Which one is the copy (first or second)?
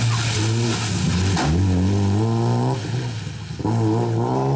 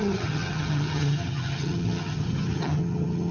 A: second